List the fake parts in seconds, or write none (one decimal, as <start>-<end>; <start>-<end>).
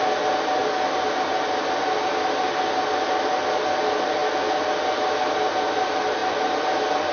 none